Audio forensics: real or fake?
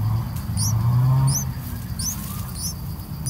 real